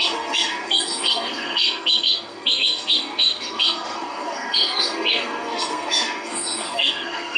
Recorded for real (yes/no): no